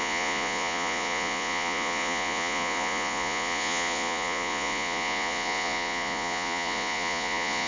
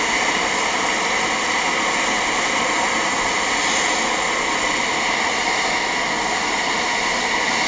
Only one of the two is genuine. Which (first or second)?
second